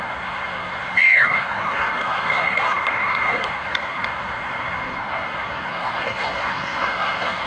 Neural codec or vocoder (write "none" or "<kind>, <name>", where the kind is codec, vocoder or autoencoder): codec, SNAC